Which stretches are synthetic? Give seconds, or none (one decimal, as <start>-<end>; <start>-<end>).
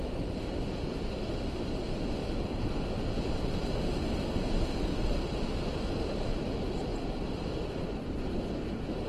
6.9-8.0